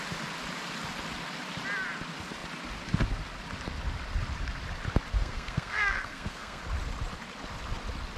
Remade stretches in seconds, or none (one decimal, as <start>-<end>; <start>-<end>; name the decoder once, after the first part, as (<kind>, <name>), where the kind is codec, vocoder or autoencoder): 5.1-6.6 (codec, SNAC)